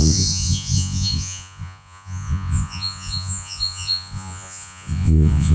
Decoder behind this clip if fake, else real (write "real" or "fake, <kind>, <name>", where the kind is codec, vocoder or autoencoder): fake, vocoder, Vocos